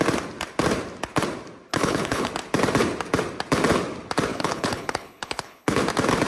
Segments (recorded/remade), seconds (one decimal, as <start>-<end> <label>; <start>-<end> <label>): 0.0-1.7 recorded; 1.7-2.3 remade; 2.3-4.3 recorded; 4.3-5.8 remade; 5.8-6.3 recorded